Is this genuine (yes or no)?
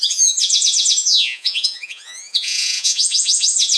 no